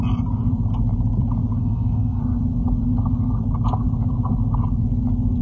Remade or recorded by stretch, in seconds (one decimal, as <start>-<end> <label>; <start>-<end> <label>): 0.0-1.6 recorded; 1.6-2.2 remade; 2.2-5.4 recorded